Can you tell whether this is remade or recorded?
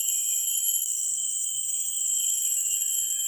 remade